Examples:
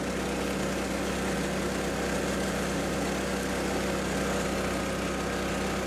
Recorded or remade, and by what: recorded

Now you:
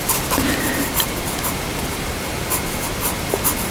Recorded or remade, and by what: recorded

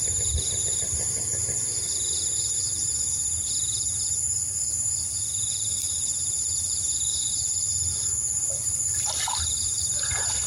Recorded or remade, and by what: recorded